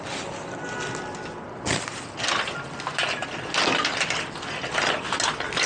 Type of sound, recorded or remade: recorded